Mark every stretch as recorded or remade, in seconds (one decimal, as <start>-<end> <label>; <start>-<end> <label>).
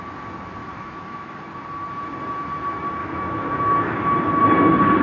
0.0-0.6 recorded; 0.6-1.4 remade; 1.4-3.0 recorded; 3.0-4.4 remade; 4.4-5.0 recorded